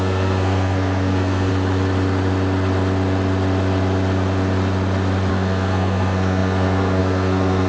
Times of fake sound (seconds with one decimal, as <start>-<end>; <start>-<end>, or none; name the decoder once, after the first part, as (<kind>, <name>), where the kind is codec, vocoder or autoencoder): 0.0-1.5 (codec, SNAC); 5.3-7.7